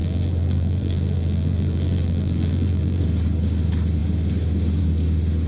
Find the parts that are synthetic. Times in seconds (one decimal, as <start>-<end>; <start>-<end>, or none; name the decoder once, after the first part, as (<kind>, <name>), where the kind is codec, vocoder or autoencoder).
0.0-3.0 (vocoder, BigVGAN v2)